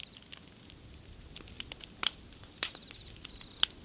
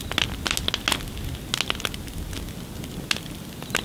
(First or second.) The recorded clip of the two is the second